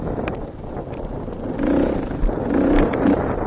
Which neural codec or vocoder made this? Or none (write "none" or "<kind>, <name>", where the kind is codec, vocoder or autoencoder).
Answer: none